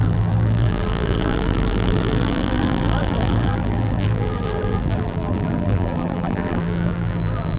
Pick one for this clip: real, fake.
fake